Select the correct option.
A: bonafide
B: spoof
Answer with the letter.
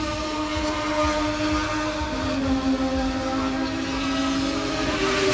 A